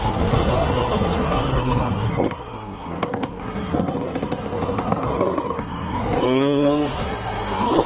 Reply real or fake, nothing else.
fake